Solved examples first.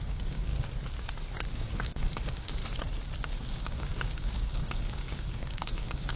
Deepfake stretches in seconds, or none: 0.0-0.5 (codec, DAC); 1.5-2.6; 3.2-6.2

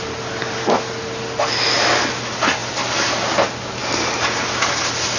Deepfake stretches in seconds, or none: none

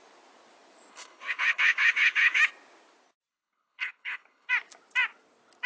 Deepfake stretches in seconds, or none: 0.9-2.4 (codec, HILCodec); 3.3-4.5